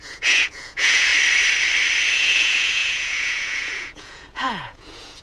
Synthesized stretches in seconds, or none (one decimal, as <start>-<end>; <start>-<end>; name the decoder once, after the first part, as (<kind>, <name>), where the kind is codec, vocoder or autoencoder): 0.0-1.1 (vocoder, Vocos); 2.1-5.2